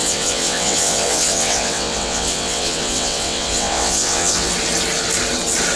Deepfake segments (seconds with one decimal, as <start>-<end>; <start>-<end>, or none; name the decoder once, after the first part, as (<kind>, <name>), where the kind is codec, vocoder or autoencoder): 0.0-4.5 (vocoder, WaveNeXt)